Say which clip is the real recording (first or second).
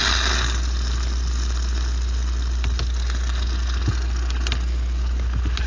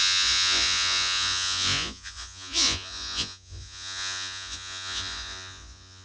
first